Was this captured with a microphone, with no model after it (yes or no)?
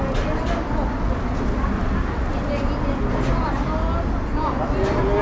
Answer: yes